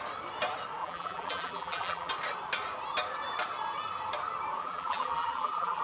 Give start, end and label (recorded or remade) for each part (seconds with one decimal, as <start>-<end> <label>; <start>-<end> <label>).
0.0-0.8 recorded; 0.8-2.1 remade; 2.1-4.6 recorded; 4.6-5.8 remade